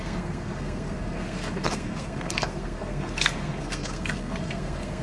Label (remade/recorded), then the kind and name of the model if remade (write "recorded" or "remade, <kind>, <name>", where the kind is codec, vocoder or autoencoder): remade, codec, SNAC